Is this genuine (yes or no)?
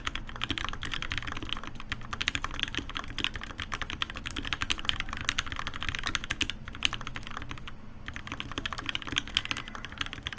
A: yes